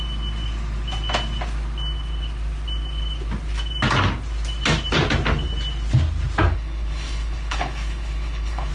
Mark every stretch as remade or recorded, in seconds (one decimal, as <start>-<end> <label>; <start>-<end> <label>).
0.0-6.5 recorded; 6.5-8.7 remade